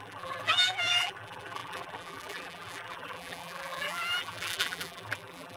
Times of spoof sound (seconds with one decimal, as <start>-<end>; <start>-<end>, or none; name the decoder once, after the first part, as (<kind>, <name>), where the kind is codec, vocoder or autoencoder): 0.0-5.6 (vocoder, BigVGAN v2)